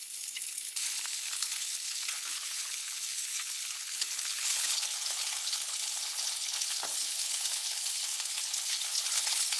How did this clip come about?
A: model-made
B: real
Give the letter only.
A